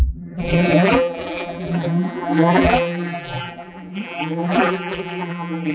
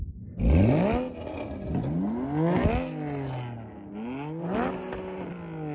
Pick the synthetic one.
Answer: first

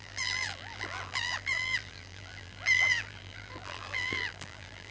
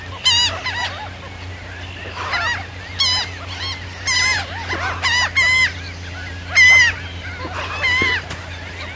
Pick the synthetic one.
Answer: first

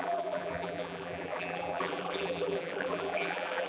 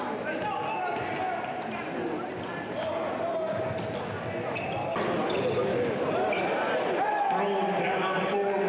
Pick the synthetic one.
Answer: first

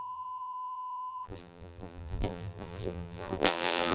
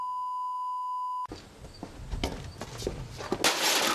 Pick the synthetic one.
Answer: first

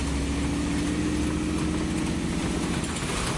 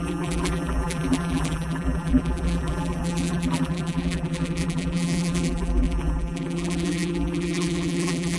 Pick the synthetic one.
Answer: second